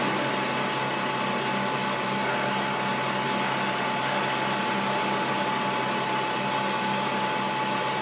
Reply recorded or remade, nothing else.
recorded